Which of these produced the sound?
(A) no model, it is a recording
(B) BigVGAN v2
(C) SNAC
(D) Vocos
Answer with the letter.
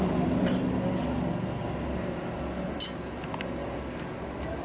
A